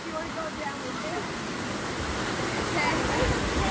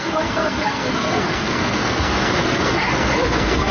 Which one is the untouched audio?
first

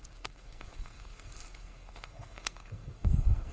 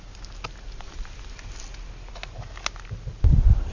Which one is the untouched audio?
second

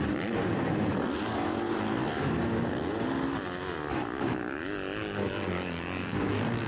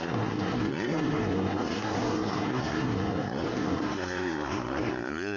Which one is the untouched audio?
first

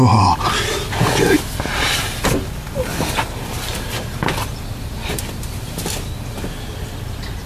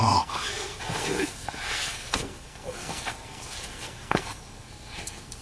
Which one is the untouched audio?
first